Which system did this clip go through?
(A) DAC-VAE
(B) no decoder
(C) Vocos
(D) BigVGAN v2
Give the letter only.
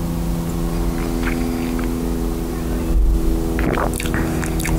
B